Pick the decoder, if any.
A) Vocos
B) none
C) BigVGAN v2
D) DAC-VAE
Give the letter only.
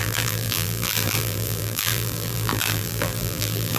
C